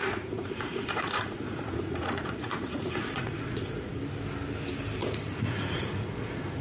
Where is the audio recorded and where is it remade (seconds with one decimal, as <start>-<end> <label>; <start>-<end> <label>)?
0.0-4.0 remade; 4.0-5.0 recorded; 5.0-6.6 remade